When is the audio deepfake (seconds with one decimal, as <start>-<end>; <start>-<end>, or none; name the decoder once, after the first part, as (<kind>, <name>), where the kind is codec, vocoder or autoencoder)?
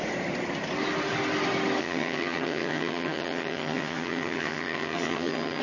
1.8-5.6 (vocoder, HiFi-GAN)